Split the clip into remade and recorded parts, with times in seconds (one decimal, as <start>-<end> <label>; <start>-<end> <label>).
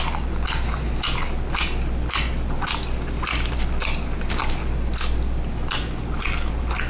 0.0-6.9 recorded